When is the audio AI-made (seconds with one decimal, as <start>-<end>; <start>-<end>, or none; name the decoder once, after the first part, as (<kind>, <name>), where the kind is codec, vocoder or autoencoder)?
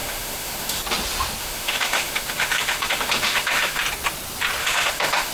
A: 0.0-0.8 (autoencoder, DAC-VAE); 1.4-3.8; 4.6-5.3